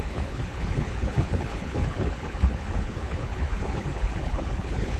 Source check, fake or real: fake